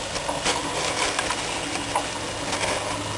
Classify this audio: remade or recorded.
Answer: recorded